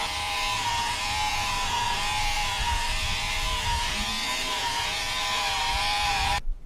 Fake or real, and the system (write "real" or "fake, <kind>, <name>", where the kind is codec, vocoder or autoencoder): fake, vocoder, Vocos